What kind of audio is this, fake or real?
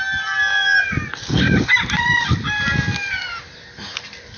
real